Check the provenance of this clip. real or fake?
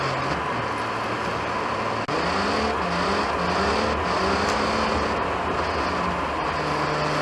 real